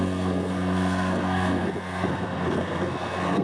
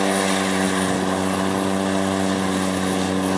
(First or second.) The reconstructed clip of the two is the first